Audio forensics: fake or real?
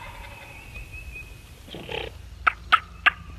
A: real